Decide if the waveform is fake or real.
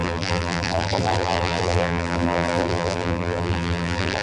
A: fake